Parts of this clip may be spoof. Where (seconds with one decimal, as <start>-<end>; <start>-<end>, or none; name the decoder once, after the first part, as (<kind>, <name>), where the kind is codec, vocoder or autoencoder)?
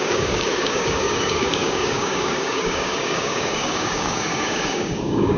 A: 0.0-5.4 (codec, DAC)